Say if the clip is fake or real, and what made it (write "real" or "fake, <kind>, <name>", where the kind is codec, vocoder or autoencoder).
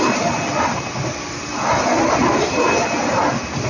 real